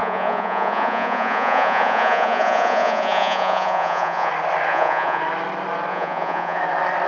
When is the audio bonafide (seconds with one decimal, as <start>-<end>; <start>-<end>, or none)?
4.3-4.7; 5.2-5.9; 6.6-7.1